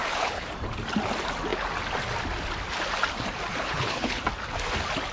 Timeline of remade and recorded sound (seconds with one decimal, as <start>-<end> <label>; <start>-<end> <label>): 0.0-0.5 remade; 0.5-3.5 recorded; 3.5-4.2 remade; 4.2-5.1 recorded